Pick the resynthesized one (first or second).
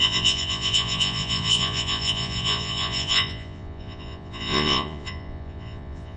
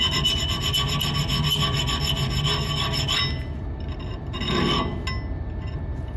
first